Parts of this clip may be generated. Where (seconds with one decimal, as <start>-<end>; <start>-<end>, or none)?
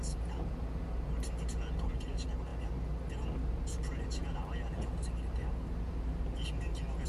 none